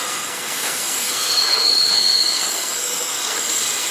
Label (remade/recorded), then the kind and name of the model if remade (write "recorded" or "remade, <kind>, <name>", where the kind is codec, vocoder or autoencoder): remade, codec, SNAC